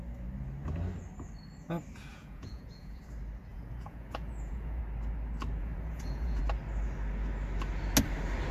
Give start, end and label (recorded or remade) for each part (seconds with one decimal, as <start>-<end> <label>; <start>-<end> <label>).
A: 0.0-2.1 recorded; 2.1-3.0 remade; 3.0-3.5 recorded; 3.5-4.8 remade; 4.8-5.6 recorded; 5.6-6.4 remade; 6.4-8.5 recorded